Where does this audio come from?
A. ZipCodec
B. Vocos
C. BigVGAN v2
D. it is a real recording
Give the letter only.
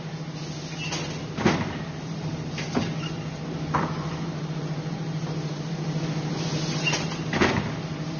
D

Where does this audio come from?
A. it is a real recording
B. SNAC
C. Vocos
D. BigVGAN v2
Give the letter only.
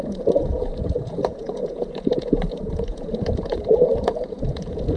C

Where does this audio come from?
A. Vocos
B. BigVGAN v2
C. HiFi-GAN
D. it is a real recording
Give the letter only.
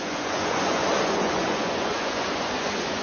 A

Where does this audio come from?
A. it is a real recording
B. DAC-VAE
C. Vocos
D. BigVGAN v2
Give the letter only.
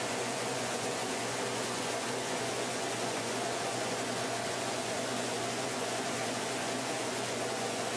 C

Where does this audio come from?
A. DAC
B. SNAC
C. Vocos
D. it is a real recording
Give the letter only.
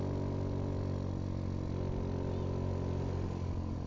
D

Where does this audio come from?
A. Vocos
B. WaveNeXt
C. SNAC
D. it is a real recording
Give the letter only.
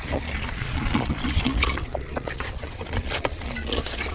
A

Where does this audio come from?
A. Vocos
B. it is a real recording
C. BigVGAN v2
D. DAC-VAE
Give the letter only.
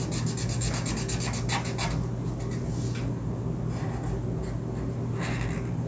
B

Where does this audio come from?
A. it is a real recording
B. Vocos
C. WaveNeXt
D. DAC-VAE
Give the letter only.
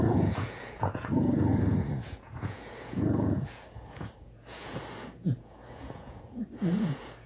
B